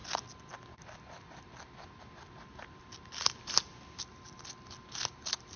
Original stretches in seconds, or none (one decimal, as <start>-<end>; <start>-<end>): 3.4-5.6